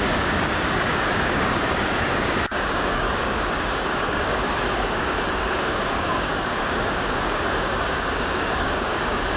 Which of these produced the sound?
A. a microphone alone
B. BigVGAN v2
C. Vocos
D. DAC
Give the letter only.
D